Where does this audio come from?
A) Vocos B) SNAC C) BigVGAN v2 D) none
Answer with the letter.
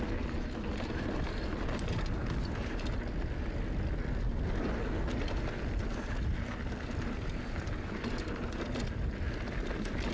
D